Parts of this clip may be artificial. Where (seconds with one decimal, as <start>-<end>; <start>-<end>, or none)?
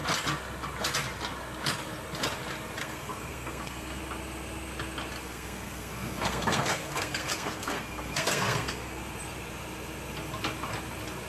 2.8-4.0; 5.2-9.0